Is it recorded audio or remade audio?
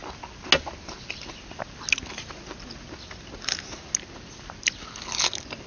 recorded